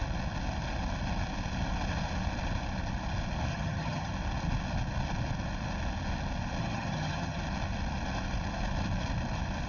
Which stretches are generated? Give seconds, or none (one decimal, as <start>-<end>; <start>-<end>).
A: 3.5-4.1; 6.6-7.4